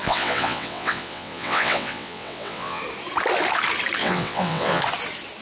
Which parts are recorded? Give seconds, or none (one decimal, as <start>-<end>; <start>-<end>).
2.8-4.0; 4.8-5.4